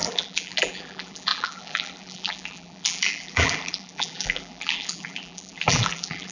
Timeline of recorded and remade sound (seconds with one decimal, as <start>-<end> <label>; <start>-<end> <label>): 0.0-6.3 remade